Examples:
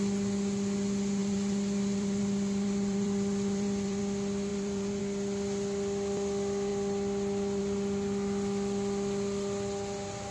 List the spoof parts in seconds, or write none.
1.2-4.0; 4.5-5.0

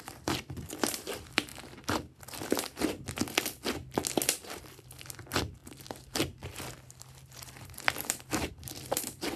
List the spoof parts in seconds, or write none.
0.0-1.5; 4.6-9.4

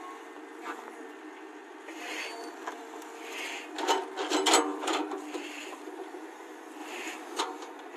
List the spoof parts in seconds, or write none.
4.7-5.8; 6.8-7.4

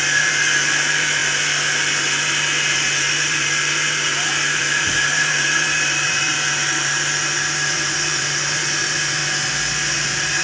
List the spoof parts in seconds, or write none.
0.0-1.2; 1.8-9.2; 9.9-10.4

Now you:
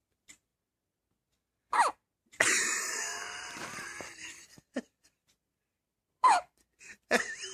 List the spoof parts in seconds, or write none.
0.0-0.5; 3.5-7.5